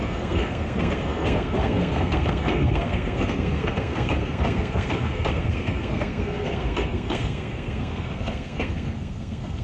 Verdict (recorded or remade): remade